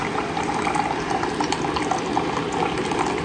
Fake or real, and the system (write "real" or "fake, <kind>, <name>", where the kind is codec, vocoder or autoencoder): real